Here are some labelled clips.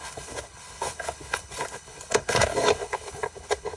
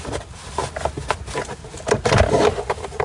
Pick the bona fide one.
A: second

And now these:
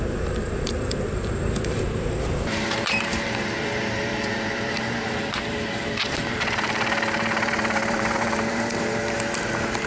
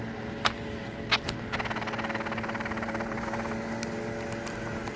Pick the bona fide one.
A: second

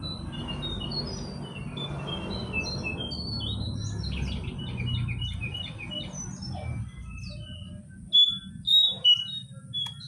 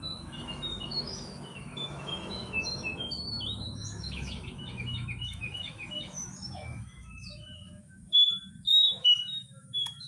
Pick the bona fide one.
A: first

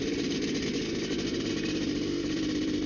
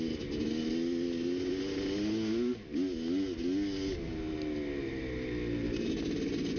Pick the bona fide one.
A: second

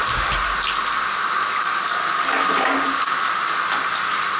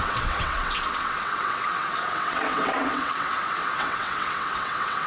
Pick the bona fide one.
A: first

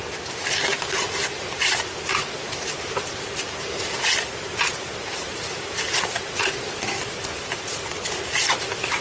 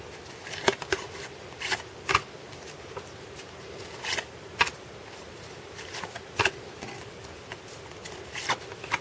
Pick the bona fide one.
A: second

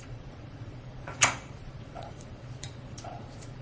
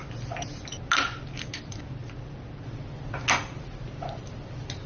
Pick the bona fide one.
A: second